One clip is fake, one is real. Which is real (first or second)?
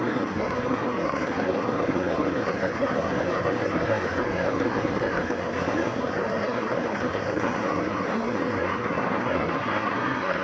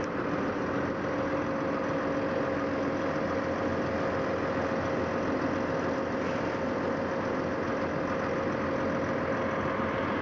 second